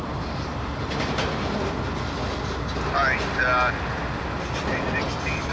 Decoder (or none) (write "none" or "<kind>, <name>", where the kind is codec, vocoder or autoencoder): none